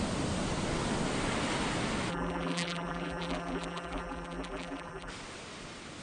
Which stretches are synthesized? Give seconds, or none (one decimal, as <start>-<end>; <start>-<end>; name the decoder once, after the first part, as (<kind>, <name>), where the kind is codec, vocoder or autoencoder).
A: 2.1-5.1 (vocoder, BigVGAN v2)